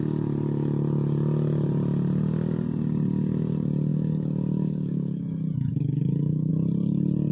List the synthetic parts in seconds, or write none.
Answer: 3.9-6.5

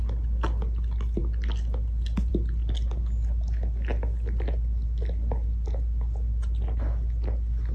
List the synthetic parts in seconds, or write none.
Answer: none

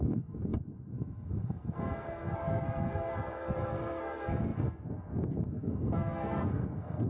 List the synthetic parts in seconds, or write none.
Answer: 0.0-7.1

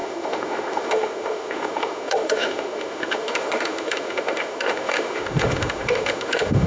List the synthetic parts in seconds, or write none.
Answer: 0.0-6.7

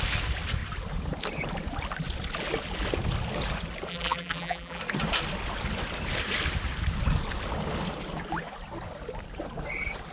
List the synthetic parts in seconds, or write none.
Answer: 3.9-4.8